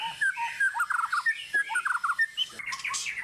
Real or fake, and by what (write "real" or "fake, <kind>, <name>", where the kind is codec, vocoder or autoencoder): real